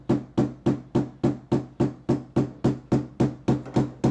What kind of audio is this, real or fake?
real